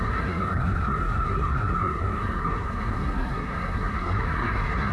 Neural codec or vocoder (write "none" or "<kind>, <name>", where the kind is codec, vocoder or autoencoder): codec, SNAC